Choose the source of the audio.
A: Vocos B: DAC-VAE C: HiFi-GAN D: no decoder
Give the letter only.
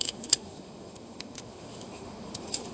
B